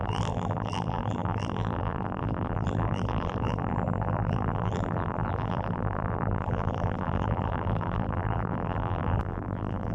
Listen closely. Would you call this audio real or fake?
fake